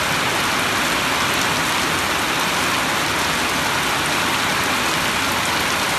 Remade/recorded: recorded